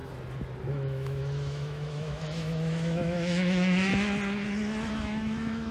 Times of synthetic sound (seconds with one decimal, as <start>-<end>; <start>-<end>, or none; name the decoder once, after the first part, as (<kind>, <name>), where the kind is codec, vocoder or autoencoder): 0.7-3.9 (autoencoder, DAC-VAE); 4.9-5.7